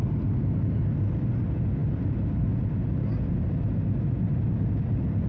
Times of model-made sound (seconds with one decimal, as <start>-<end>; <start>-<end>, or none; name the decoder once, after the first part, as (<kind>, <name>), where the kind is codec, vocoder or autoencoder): none